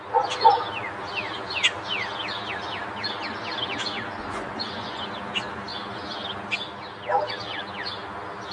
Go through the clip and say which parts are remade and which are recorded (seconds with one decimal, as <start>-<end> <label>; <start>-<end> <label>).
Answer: 0.0-4.2 recorded; 4.2-5.1 remade; 5.1-8.5 recorded